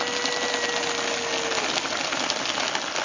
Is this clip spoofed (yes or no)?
no